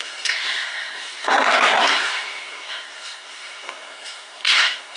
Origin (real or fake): fake